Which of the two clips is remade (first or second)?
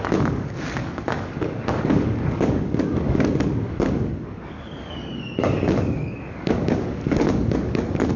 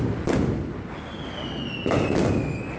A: first